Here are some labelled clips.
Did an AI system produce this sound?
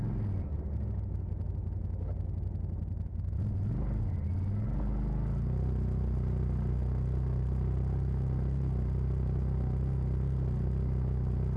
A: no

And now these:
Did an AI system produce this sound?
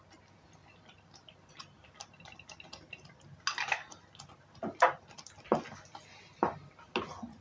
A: no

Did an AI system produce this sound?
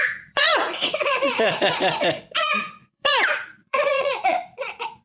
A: yes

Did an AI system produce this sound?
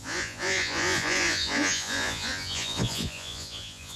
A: yes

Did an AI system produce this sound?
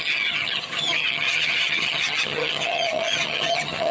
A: yes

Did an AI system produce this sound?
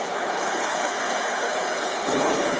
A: yes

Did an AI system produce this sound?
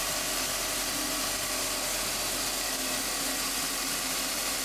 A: no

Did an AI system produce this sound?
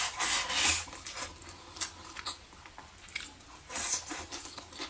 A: no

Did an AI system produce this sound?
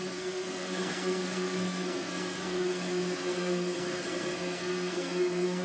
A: yes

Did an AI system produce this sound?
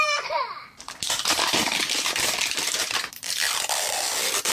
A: yes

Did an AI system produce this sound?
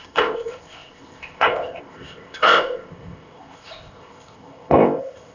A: yes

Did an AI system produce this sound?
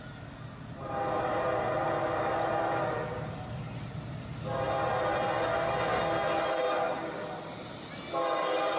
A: no